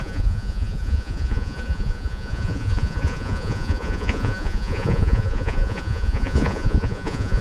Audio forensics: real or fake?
fake